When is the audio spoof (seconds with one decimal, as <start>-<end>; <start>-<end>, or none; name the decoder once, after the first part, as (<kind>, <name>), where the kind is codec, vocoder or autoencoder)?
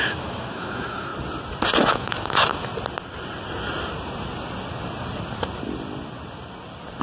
0.0-1.1 (autoencoder, DAC-VAE); 1.9-2.7